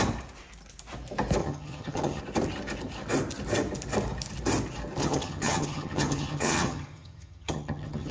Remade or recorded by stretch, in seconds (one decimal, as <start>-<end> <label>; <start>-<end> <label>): 0.0-1.4 recorded; 1.4-2.2 remade; 2.2-5.0 recorded; 5.0-8.1 remade